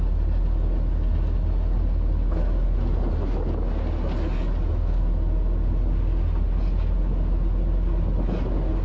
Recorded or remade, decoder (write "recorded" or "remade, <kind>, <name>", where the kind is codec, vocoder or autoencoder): recorded